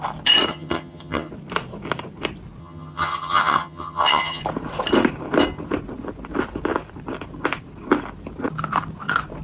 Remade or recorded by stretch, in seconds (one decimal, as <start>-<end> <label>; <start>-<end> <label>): 0.0-0.5 recorded; 0.5-1.3 remade; 1.3-2.6 recorded; 2.6-4.4 remade; 4.4-9.4 recorded